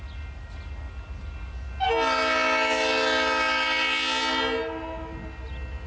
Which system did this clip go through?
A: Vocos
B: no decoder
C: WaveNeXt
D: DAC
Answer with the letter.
B